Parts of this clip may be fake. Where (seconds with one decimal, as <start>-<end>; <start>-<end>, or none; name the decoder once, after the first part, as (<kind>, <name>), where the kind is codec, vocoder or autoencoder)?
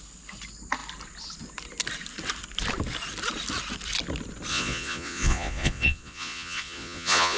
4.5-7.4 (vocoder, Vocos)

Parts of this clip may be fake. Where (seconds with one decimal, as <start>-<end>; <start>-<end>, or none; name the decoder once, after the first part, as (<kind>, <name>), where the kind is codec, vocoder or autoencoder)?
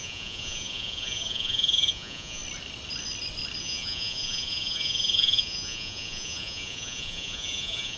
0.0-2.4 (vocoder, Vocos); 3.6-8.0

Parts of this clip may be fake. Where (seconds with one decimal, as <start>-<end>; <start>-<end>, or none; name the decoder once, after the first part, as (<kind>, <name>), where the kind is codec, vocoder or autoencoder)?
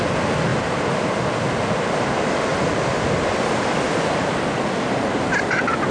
none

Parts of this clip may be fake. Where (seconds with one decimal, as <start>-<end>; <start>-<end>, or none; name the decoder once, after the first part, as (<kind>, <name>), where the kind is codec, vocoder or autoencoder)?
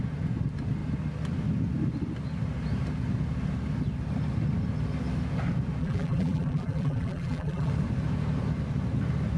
5.8-7.7 (vocoder, BigVGAN v2)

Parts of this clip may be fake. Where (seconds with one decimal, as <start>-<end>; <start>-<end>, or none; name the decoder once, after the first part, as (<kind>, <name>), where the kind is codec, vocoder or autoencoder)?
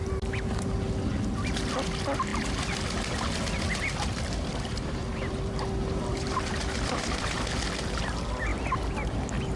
2.3-7.2 (vocoder, BigVGAN v2)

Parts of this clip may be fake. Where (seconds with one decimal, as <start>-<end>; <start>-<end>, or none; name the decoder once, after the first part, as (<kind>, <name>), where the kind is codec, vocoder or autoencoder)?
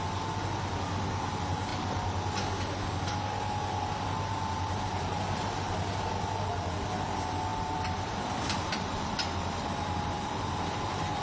7.5-11.2 (vocoder, BigVGAN v2)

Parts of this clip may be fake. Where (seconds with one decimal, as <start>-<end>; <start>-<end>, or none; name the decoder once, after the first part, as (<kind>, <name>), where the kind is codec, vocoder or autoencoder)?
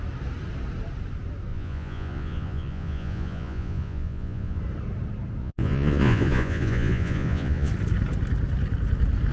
1.5-4.6 (vocoder, Vocos); 5.4-7.7